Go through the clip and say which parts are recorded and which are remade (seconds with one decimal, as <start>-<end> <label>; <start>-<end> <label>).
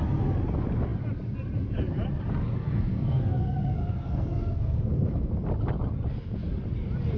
0.0-2.6 recorded; 2.6-5.3 remade; 5.3-7.2 recorded